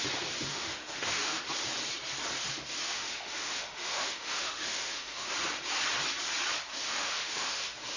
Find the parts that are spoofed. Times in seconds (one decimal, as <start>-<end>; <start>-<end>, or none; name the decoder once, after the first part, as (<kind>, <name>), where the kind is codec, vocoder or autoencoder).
0.5-1.4 (autoencoder, DAC-VAE); 2.8-5.3; 6.7-8.0